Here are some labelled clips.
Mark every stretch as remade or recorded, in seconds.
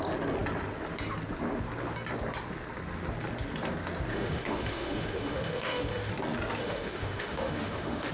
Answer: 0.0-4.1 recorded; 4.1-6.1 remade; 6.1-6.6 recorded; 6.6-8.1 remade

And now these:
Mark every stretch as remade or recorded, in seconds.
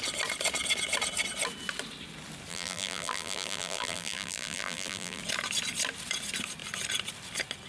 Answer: 0.0-2.5 recorded; 2.5-5.2 remade; 5.2-7.7 recorded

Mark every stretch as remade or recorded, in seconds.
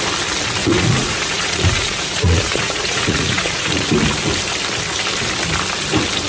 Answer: 0.0-0.6 recorded; 0.6-3.9 remade; 3.9-6.3 recorded